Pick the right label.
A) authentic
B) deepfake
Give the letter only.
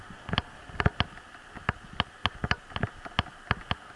A